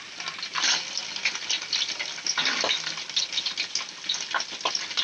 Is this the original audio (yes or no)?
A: yes